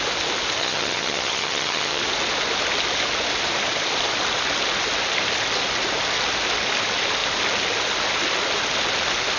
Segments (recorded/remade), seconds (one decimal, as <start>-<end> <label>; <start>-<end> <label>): 0.0-0.6 recorded; 0.6-2.0 remade; 2.0-9.4 recorded